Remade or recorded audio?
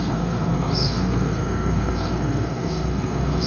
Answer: remade